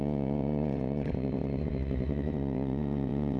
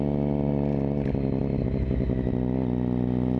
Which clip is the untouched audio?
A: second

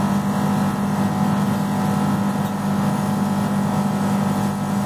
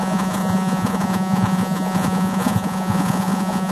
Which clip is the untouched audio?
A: first